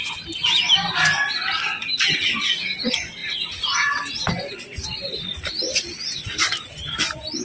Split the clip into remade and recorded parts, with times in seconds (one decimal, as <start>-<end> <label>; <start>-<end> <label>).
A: 0.0-7.4 recorded